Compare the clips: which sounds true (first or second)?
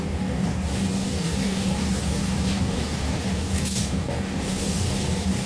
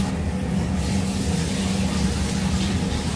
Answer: second